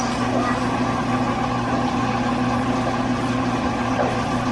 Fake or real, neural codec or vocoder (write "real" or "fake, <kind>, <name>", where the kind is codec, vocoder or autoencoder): real